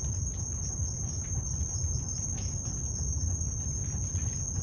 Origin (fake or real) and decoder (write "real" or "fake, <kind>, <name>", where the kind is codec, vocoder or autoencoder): real